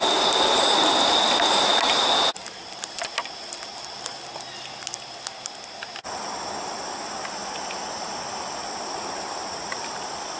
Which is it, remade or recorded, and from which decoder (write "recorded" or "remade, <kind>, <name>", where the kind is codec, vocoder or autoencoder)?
recorded